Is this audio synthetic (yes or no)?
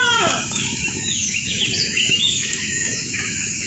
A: yes